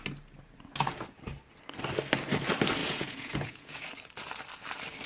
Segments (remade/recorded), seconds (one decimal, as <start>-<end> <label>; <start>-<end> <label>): 0.0-2.8 recorded; 2.8-3.9 remade; 3.9-5.1 recorded